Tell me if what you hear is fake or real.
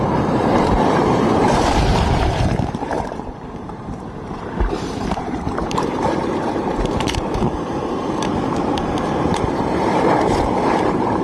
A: fake